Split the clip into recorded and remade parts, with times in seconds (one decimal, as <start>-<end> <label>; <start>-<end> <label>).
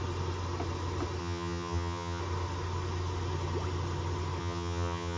0.0-1.2 recorded; 1.2-2.2 remade; 2.2-4.4 recorded; 4.4-5.2 remade